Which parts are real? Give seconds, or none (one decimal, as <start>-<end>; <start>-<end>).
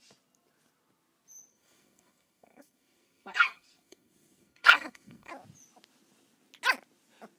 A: 0.0-1.5; 5.3-7.4